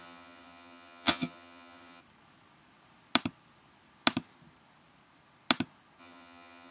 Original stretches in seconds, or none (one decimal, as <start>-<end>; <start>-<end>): 2.0-6.0